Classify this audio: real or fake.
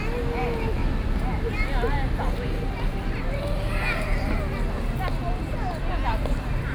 real